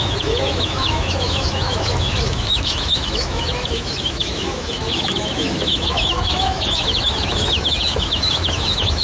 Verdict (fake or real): fake